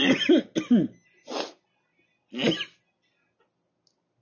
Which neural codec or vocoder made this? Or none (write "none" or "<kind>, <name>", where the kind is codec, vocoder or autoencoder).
none